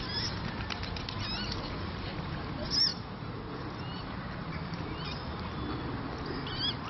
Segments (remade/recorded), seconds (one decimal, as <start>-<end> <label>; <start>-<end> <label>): 0.0-3.9 recorded; 3.9-4.7 remade; 4.7-6.9 recorded